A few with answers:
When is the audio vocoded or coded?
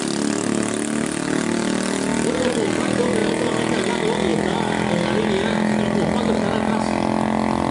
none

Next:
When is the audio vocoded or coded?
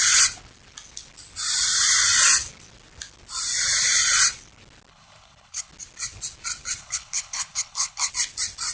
4.9-5.7 (codec, HILCodec); 6.8-8.1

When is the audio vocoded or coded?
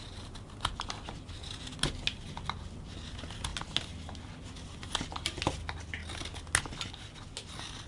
none